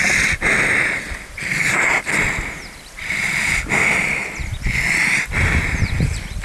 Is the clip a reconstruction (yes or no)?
no